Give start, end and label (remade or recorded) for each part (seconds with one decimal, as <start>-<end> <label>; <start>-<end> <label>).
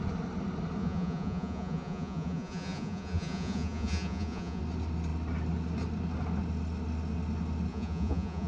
0.0-0.8 recorded; 0.8-4.6 remade; 4.6-7.7 recorded; 7.7-8.5 remade